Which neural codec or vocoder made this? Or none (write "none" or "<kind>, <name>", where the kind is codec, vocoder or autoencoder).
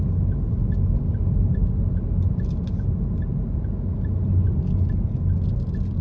none